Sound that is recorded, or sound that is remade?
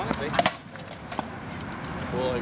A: recorded